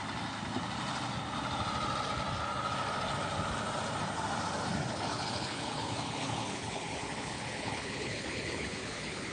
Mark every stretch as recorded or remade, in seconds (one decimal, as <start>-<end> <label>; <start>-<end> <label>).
0.0-4.9 recorded; 4.9-9.3 remade